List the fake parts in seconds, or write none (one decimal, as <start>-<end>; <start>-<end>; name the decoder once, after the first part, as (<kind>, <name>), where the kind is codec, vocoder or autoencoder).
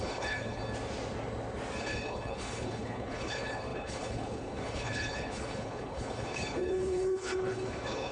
0.0-0.6 (codec, HILCodec); 1.8-8.1